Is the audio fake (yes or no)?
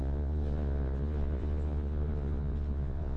yes